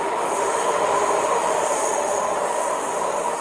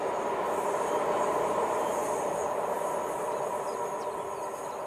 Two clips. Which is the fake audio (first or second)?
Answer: first